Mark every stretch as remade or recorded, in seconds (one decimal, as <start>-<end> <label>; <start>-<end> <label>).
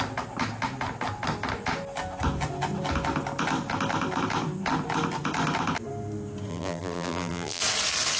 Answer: 0.0-6.5 recorded; 6.5-7.6 remade; 7.6-8.2 recorded